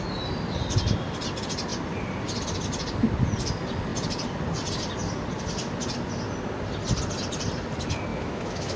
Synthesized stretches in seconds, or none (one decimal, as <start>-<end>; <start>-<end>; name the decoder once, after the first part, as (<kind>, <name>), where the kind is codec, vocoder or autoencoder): 8.1-8.8 (autoencoder, DAC-VAE)

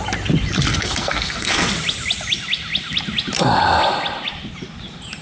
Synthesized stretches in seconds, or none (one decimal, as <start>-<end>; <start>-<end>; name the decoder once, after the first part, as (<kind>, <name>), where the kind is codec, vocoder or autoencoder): 0.7-1.7 (codec, SNAC)